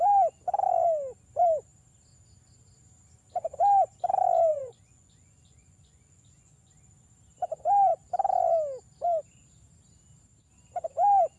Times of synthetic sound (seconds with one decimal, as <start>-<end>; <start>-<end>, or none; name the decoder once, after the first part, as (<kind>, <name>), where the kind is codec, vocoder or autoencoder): 4.5-6.7 (vocoder, Vocos)